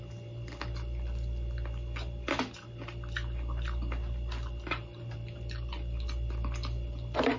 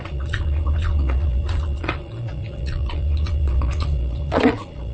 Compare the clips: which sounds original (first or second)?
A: first